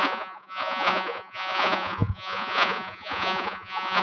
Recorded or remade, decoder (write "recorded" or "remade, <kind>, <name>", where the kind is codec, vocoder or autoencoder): remade, vocoder, Vocos